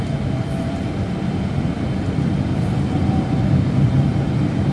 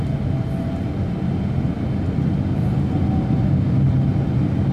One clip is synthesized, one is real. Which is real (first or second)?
second